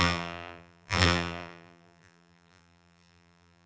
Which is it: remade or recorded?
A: remade